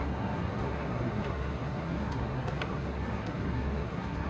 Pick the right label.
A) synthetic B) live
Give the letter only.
A